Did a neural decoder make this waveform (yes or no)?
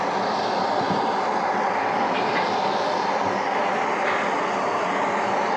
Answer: yes